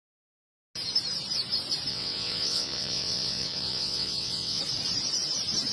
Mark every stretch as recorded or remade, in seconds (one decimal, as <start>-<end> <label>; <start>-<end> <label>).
0.0-1.9 recorded; 1.9-4.6 remade; 4.6-5.7 recorded

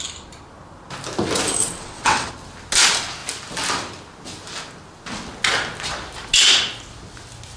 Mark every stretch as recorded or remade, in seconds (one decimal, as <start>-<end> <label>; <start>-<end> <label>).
0.0-1.6 recorded; 1.6-2.3 remade; 2.3-7.6 recorded

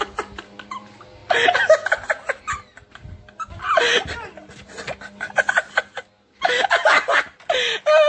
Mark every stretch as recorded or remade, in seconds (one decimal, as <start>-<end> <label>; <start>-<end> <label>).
0.0-8.1 recorded

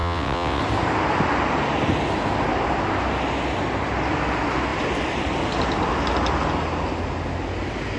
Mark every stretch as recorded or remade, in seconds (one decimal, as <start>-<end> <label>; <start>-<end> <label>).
0.0-0.6 remade; 0.6-8.0 recorded